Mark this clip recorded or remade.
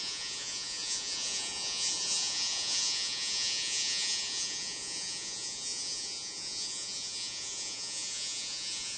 remade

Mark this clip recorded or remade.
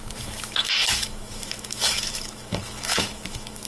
remade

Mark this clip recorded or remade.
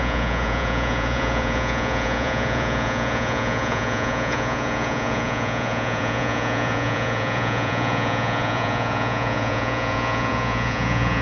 remade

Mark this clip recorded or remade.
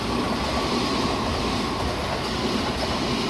recorded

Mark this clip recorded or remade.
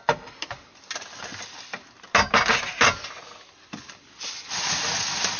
recorded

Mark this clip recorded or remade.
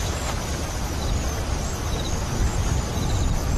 recorded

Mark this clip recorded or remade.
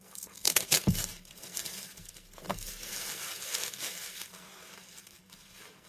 remade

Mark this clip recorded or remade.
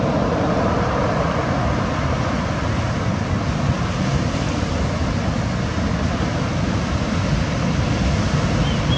recorded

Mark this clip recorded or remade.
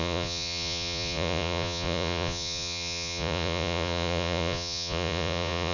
remade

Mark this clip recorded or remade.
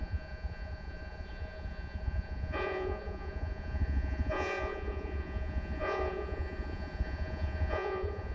remade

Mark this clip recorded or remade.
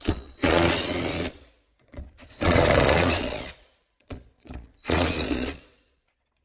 remade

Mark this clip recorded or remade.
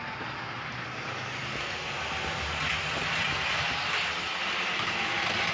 recorded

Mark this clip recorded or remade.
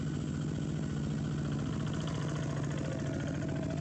recorded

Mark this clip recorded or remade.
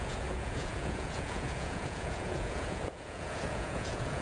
remade